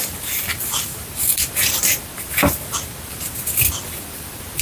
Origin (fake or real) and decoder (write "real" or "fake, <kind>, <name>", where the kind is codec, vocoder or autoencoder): real